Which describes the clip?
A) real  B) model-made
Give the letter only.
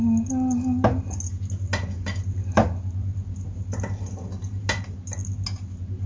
A